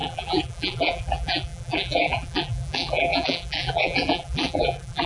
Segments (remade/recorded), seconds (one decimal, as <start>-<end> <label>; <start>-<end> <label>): 0.0-5.1 remade